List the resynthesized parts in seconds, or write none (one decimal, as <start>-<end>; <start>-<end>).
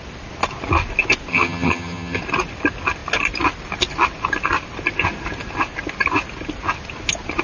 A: 1.3-2.2